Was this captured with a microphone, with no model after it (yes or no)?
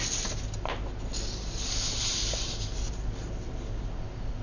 yes